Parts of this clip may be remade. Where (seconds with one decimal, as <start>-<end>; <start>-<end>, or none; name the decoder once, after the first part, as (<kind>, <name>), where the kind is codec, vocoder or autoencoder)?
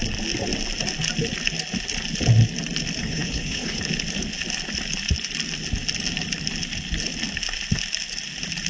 3.0-3.8 (codec, HILCodec)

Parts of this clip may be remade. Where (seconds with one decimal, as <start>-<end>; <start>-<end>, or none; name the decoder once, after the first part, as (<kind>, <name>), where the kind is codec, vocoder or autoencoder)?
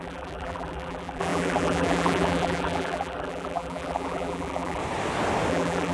0.0-4.8 (vocoder, BigVGAN v2); 5.5-5.9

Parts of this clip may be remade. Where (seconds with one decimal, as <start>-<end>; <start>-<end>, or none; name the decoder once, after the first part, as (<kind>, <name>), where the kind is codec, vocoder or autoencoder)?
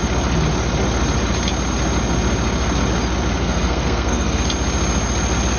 3.4-4.4 (codec, SNAC)